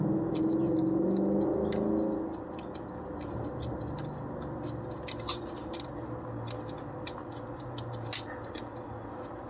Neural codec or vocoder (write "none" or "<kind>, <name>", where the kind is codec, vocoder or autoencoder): none